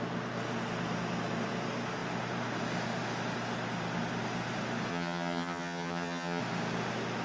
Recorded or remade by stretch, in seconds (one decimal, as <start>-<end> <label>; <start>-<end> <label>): 0.0-4.9 recorded; 4.9-6.4 remade; 6.4-7.2 recorded